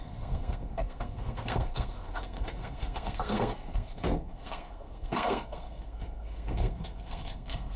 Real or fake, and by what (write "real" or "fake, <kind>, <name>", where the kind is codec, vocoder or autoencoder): fake, codec, SNAC